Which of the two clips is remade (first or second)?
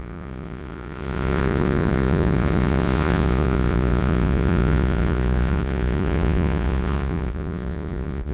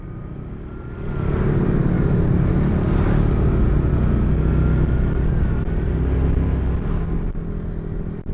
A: first